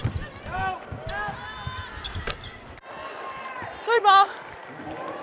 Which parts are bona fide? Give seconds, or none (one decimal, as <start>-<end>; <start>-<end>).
0.5-3.6; 4.0-4.6